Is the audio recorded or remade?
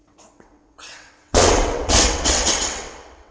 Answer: remade